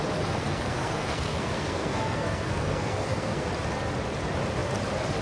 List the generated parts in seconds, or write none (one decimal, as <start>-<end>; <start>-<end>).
0.4-3.5